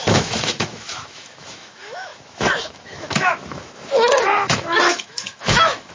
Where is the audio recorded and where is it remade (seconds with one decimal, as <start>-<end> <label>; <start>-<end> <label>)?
0.0-5.9 remade